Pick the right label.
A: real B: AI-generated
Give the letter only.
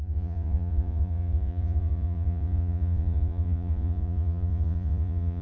B